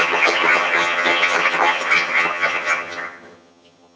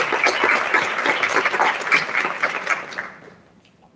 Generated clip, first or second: first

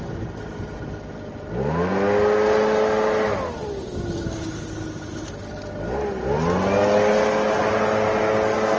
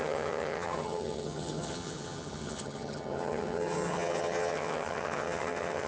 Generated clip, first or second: second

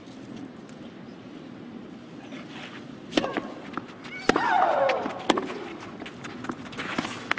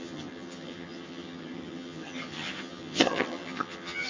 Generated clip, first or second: second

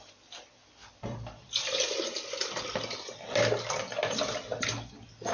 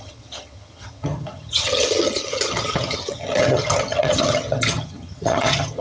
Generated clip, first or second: second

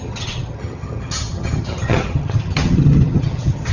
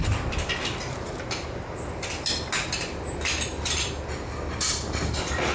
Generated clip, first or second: first